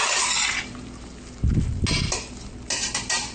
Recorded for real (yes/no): yes